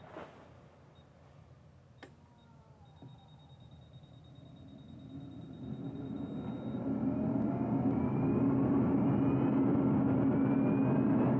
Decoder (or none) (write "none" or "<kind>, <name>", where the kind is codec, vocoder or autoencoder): none